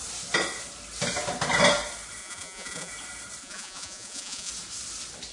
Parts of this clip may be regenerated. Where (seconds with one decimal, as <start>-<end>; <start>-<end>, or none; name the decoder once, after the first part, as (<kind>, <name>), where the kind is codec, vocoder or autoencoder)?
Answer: 2.2-2.9 (vocoder, Vocos); 3.4-4.5